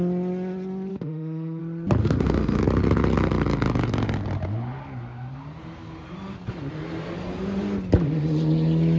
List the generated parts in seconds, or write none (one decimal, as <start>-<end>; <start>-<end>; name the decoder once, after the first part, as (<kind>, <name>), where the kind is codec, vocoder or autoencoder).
0.9-1.6 (autoencoder, DAC-VAE); 2.0-2.6